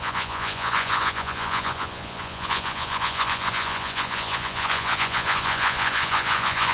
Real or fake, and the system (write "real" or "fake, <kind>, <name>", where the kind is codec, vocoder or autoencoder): fake, vocoder, Vocos